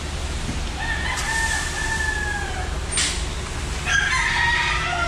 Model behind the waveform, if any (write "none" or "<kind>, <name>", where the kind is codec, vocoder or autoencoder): none